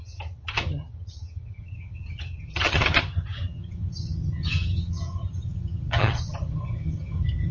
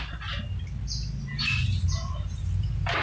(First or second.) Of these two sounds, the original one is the second